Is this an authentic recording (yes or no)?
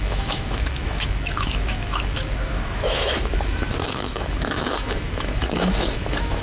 no